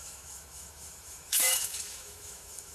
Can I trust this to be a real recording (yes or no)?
no